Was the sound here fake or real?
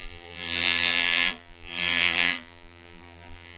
fake